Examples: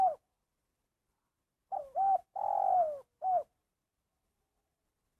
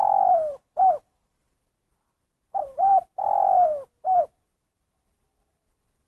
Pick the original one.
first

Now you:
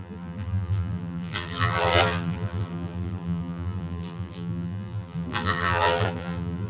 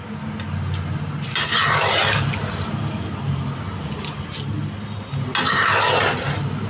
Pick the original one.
second